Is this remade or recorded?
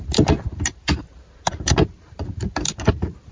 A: remade